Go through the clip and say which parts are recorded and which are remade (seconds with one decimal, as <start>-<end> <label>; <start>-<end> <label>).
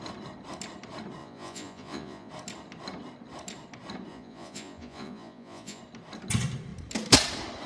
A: 0.0-1.2 recorded; 1.2-2.3 remade; 2.3-4.1 recorded; 4.1-5.8 remade; 5.8-7.7 recorded